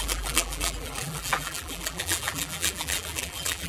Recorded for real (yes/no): no